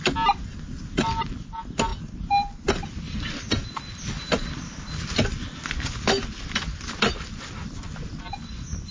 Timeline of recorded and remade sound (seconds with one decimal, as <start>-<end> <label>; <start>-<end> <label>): 0.0-8.9 recorded

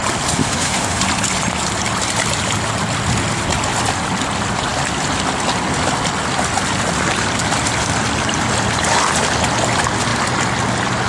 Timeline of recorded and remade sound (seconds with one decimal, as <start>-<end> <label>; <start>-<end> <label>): 0.0-0.4 recorded; 0.4-1.0 remade; 1.0-11.1 recorded